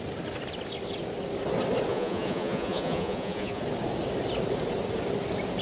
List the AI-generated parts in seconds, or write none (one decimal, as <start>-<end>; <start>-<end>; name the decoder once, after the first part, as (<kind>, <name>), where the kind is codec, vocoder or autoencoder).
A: 1.9-3.6 (vocoder, Vocos)